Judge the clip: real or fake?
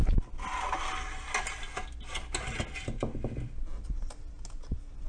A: real